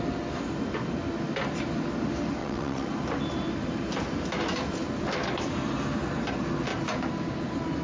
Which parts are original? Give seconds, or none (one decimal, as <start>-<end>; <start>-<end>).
0.0-2.4; 2.9-7.8